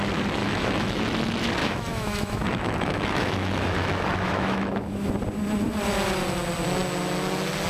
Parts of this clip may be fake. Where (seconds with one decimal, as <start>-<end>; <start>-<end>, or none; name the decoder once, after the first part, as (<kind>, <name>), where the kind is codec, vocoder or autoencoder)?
0.4-1.0 (autoencoder, DAC-VAE); 1.6-5.1